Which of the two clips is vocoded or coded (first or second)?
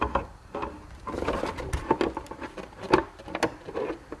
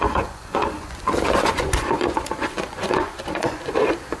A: second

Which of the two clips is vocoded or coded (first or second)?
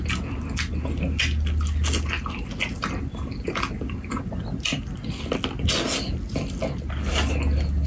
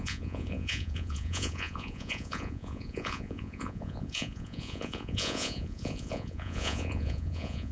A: second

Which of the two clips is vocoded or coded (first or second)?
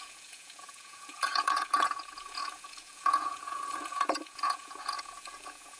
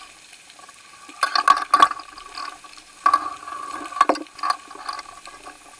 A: first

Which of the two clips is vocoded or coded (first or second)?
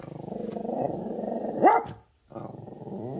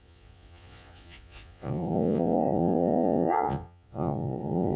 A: second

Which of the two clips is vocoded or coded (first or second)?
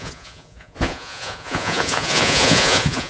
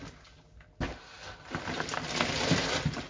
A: first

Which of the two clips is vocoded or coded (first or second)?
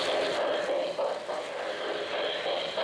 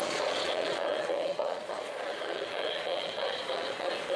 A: second